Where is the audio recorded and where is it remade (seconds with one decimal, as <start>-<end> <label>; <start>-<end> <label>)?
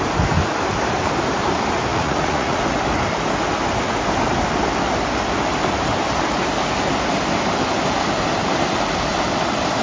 0.0-1.9 recorded; 1.9-2.6 remade; 2.6-9.8 recorded